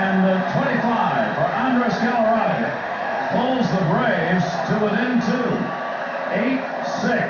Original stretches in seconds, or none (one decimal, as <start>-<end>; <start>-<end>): 0.0-2.5; 3.2-7.3